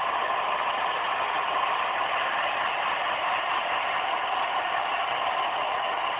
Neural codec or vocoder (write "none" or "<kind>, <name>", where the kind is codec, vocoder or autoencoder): none